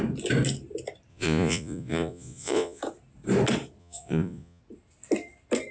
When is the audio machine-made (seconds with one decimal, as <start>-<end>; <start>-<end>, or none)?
1.1-2.8; 3.8-4.6